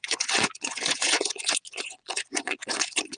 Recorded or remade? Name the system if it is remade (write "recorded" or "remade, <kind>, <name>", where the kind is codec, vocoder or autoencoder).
remade, vocoder, Vocos